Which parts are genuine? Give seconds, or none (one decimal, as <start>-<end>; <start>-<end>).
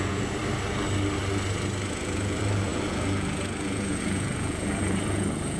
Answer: 0.4-1.9